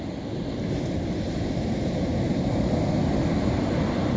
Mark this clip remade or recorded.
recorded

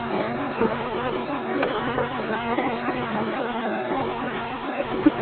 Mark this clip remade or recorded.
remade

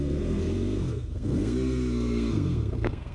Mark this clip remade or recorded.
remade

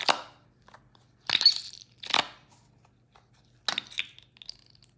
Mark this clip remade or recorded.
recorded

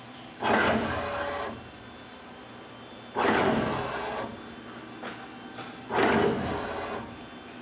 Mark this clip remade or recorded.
recorded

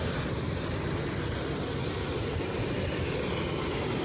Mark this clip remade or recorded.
recorded